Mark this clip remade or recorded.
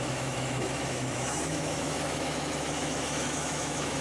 remade